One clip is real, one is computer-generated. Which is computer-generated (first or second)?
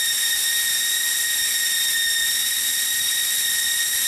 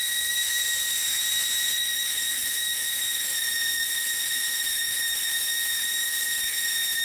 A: second